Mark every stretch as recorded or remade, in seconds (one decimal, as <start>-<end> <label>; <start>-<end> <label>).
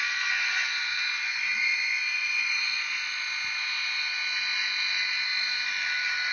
0.0-2.9 remade; 2.9-6.3 recorded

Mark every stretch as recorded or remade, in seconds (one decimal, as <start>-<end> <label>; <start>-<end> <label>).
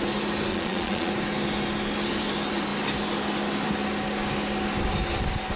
0.0-0.5 recorded; 0.5-1.1 remade; 1.1-5.6 recorded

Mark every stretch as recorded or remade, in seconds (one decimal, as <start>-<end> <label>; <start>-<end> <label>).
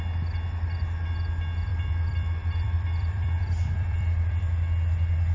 0.0-1.7 recorded; 1.7-4.4 remade; 4.4-5.3 recorded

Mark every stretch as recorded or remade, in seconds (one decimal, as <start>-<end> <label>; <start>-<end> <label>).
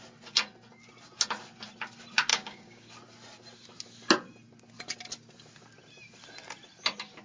0.0-2.3 recorded; 2.3-2.9 remade; 2.9-7.2 recorded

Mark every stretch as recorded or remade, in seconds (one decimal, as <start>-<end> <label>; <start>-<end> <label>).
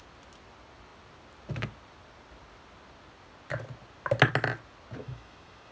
0.0-5.0 recorded; 5.0-5.7 remade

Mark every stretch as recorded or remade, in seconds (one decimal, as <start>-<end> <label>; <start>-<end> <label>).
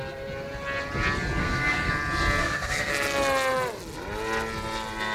0.0-1.4 recorded; 1.4-1.9 remade; 1.9-2.4 recorded; 2.4-2.9 remade; 2.9-5.1 recorded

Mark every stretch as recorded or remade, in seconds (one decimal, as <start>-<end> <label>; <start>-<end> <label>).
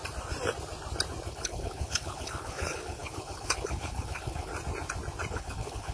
0.0-1.3 recorded; 1.3-4.5 remade; 4.5-5.3 recorded; 5.3-5.9 remade